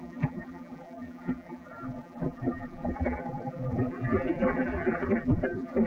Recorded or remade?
remade